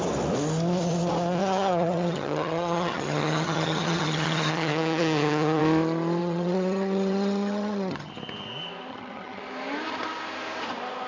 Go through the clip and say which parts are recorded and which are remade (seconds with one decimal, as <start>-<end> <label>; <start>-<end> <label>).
0.0-1.4 recorded; 1.4-5.6 remade; 5.6-6.2 recorded; 6.2-8.1 remade; 8.1-8.9 recorded; 8.9-9.4 remade; 9.4-11.1 recorded